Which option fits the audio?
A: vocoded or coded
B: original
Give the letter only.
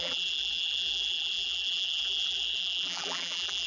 A